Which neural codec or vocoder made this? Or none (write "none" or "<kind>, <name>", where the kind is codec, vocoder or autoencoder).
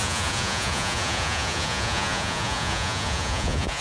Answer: vocoder, Vocos